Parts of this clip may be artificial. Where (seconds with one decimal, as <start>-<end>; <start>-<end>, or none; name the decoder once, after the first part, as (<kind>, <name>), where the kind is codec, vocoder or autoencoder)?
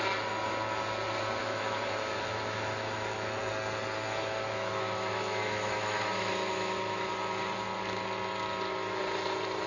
1.4-3.4 (autoencoder, DAC-VAE); 4.2-7.1